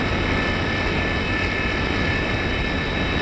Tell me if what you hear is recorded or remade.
recorded